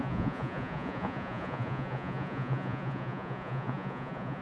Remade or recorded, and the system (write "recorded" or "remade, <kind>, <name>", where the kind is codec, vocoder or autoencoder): remade, vocoder, Vocos